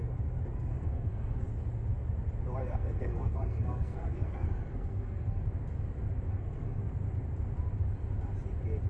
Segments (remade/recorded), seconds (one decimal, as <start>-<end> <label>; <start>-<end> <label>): 0.0-0.7 recorded; 0.7-1.5 remade; 1.5-2.6 recorded; 2.6-5.4 remade; 5.4-6.3 recorded; 6.3-6.8 remade; 6.8-8.9 recorded